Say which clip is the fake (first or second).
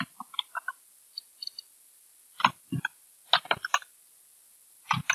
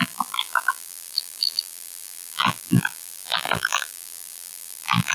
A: second